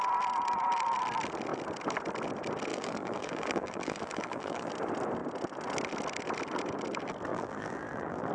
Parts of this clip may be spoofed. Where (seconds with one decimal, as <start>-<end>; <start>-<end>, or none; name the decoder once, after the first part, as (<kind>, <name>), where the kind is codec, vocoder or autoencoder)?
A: 2.7-4.7 (vocoder, BigVGAN v2); 7.3-8.3